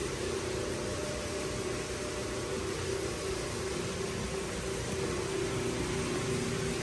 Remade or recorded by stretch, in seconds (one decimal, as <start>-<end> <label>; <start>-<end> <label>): 0.0-2.0 remade; 2.0-6.8 recorded